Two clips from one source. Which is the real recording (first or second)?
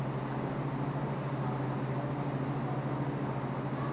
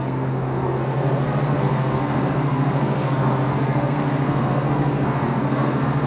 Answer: first